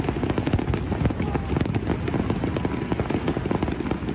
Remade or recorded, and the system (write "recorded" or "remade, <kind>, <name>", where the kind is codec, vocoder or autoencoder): recorded